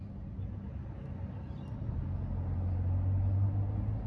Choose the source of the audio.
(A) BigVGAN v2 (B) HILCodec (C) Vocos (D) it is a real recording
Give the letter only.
D